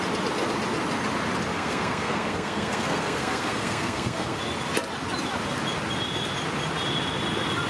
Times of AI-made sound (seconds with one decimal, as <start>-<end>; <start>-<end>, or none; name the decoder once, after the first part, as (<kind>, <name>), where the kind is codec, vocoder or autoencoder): 1.5-4.4 (codec, SNAC)

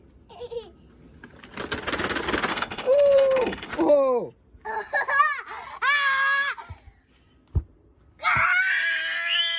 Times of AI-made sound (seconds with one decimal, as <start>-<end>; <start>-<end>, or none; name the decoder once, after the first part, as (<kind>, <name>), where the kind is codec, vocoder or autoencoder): 2.5-3.7 (codec, SNAC)

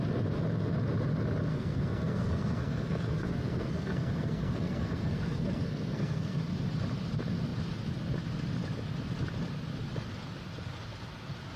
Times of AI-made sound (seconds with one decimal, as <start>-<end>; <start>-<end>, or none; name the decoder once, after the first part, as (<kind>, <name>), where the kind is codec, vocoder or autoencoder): 1.5-6.4 (codec, SNAC)

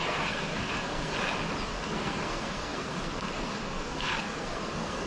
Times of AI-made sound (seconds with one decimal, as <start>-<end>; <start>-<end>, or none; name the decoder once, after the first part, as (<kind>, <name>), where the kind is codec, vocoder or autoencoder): 0.0-1.1 (codec, SNAC); 1.7-5.1

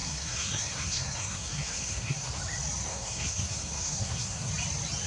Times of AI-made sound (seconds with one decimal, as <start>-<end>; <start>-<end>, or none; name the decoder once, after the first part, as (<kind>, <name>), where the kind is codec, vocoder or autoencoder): 0.0-2.3 (codec, SNAC); 2.9-4.5

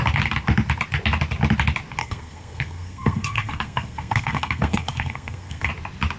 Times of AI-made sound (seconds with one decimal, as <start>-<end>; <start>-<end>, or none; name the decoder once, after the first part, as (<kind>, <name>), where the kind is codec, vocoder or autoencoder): 2.0-5.7 (codec, SNAC)

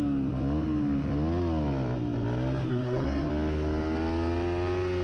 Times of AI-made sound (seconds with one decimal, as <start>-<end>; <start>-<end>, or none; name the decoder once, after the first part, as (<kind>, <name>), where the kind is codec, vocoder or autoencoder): 2.7-3.3 (codec, SNAC)